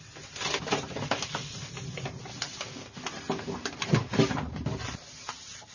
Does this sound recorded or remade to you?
recorded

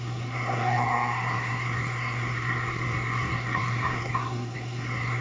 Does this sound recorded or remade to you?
remade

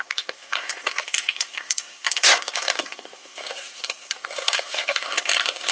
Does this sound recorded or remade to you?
remade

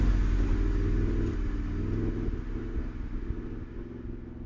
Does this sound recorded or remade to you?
recorded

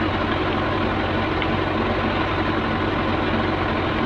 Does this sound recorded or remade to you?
recorded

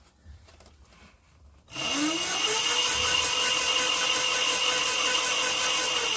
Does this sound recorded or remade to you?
recorded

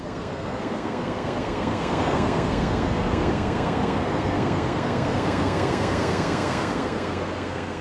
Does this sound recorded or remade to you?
remade